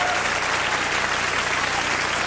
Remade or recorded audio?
recorded